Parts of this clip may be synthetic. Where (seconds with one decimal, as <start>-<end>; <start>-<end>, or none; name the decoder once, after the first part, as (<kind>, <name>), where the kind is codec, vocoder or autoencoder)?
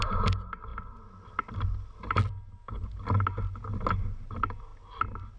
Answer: none